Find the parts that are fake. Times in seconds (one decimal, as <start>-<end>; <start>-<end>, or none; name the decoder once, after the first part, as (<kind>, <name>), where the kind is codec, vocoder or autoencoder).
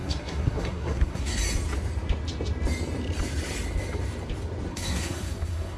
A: 0.0-1.4 (codec, SNAC); 4.7-5.8